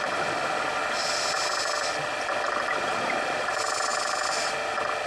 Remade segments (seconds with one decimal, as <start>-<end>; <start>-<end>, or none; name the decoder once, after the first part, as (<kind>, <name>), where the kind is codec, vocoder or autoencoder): 0.0-0.8 (vocoder, BigVGAN v2); 1.9-3.9